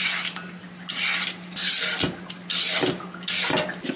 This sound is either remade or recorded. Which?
recorded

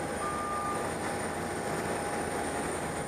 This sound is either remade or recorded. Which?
recorded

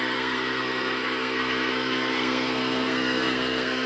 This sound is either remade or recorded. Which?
remade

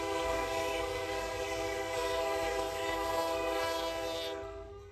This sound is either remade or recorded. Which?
remade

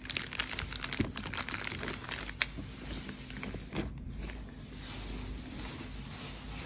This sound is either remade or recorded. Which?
recorded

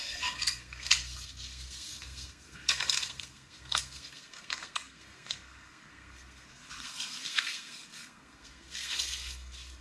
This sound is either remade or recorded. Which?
remade